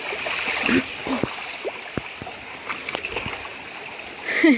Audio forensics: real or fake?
real